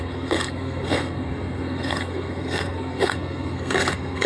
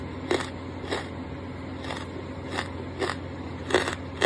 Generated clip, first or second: first